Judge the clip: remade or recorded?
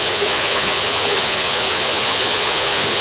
remade